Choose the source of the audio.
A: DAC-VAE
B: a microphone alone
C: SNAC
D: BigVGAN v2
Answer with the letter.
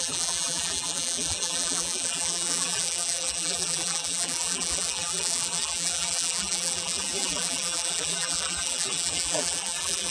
D